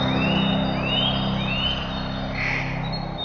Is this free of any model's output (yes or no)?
yes